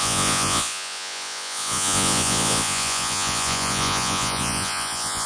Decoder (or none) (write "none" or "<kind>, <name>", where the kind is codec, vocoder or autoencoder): vocoder, Vocos